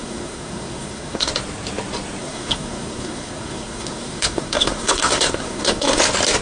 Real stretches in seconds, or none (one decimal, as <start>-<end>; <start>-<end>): 1.3-2.2; 6.0-6.4